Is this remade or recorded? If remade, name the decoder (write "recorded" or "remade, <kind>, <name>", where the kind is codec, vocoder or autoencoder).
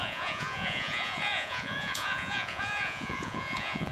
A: remade, vocoder, Vocos